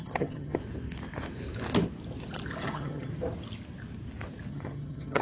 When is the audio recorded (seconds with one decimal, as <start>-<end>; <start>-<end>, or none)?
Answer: 0.6-2.6; 3.1-4.5